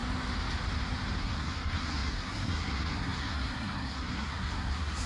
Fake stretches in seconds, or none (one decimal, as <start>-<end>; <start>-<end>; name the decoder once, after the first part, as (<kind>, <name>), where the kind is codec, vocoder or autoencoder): 1.2-5.1 (codec, SNAC)

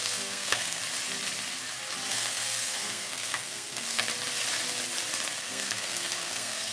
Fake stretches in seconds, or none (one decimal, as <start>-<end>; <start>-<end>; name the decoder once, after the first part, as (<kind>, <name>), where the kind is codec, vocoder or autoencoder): 0.0-0.8 (codec, SNAC); 2.1-4.1; 5.4-6.7

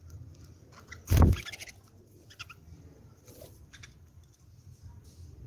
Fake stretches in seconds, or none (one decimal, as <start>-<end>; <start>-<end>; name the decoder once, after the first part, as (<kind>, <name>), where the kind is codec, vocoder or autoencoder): none